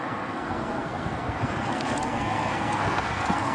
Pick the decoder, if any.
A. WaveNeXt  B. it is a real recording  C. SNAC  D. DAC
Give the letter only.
C